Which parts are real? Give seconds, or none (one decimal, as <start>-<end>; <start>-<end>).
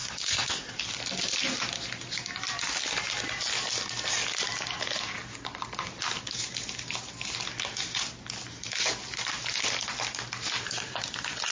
0.8-11.5